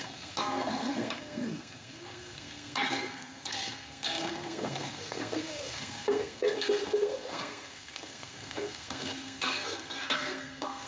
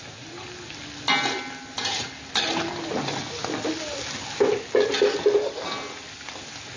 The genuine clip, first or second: second